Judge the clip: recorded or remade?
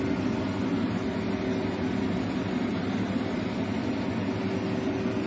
recorded